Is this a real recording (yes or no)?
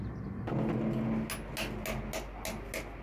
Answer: yes